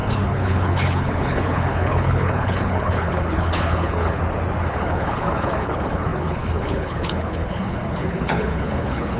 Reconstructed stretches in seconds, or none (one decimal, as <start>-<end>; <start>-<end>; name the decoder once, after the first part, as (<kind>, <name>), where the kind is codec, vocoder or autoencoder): 0.0-4.2 (codec, HILCodec); 4.7-9.2